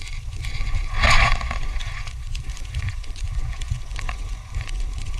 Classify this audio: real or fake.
fake